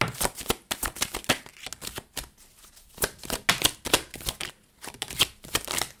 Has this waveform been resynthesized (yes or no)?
no